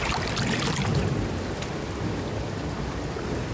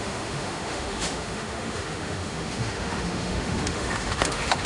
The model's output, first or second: second